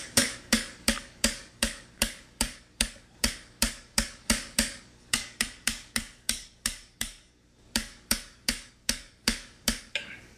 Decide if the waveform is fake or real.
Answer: fake